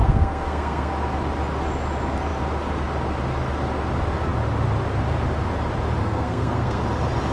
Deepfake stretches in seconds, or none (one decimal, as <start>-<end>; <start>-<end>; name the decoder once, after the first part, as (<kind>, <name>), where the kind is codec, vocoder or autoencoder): 0.0-0.9 (codec, SNAC); 6.0-6.8

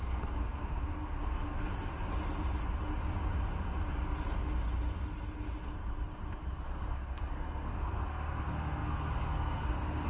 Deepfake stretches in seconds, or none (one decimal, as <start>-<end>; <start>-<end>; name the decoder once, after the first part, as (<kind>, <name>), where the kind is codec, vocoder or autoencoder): 0.0-1.9 (codec, SNAC); 6.6-10.1

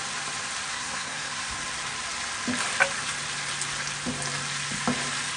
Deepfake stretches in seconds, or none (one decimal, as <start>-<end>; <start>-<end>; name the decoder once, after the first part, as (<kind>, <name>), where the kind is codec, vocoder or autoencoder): 0.7-1.5 (codec, SNAC)

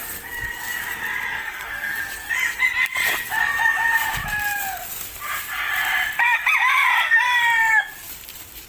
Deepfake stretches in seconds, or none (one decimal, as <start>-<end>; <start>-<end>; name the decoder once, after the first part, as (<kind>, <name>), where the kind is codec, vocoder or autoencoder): 1.3-2.0 (codec, SNAC)

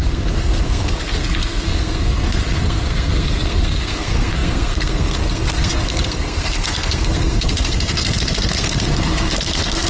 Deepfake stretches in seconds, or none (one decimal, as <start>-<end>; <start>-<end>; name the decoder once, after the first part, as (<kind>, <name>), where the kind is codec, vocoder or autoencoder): 0.0-9.9 (codec, SNAC)

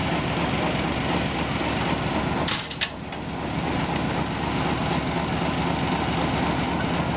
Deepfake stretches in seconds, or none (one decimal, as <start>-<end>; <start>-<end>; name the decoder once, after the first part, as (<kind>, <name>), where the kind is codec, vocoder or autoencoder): none

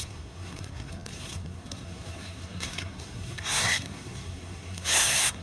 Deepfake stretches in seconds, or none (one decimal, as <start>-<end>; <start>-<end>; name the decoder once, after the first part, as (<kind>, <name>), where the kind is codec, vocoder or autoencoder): 0.0-5.4 (codec, SNAC)

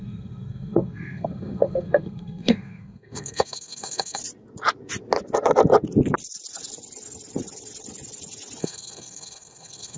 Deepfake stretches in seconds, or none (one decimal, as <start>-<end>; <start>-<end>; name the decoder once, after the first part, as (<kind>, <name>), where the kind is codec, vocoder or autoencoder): 0.0-4.2 (codec, SNAC); 8.6-10.0